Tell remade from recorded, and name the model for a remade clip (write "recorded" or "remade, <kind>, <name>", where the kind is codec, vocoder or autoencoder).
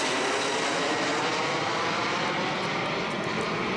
recorded